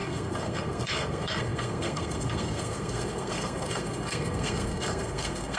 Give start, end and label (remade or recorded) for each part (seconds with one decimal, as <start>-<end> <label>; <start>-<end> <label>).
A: 0.0-5.6 remade